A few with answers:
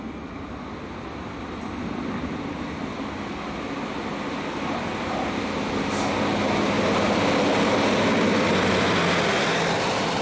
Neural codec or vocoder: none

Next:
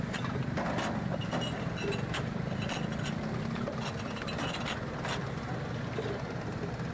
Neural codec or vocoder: none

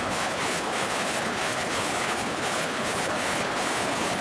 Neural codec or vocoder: codec, HILCodec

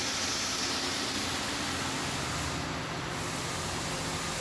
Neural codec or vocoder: none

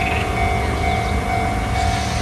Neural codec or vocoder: none